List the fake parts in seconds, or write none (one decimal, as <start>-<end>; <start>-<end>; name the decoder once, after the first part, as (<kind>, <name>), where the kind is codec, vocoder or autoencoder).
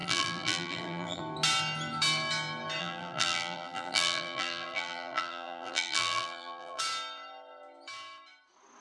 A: 0.0-1.2 (vocoder, BigVGAN v2); 2.8-6.8